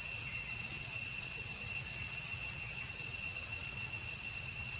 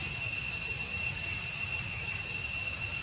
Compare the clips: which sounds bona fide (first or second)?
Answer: second